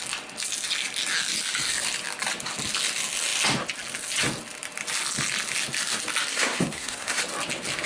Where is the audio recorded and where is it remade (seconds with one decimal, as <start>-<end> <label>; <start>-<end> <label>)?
0.0-6.3 recorded; 6.3-7.2 remade; 7.2-7.9 recorded